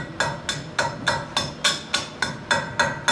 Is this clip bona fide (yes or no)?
yes